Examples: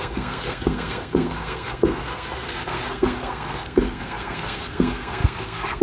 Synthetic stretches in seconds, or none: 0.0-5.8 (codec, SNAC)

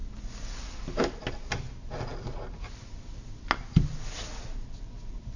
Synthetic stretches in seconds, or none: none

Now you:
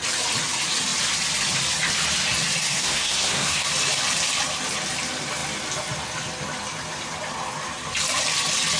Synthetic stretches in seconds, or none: 2.6-3.7 (codec, SNAC)

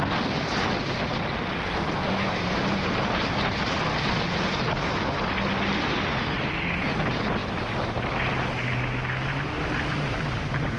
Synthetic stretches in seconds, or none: none

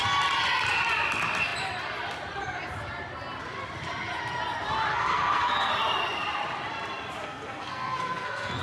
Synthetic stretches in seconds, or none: 4.9-5.7 (codec, SNAC); 7.2-8.6

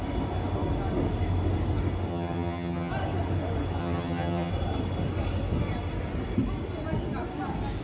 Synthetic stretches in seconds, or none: 2.1-2.9 (vocoder, HiFi-GAN); 3.8-4.5

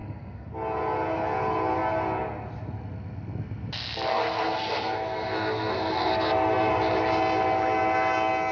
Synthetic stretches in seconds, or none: 0.0-0.5 (codec, SNAC); 4.1-6.7

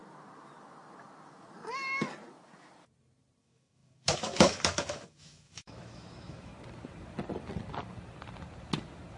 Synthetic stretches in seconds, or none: 3.4-6.5 (autoencoder, DAC-VAE)